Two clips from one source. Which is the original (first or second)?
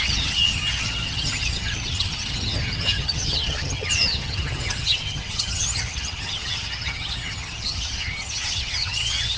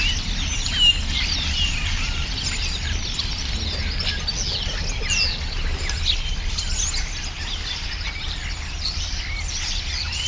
second